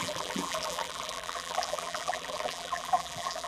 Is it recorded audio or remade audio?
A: remade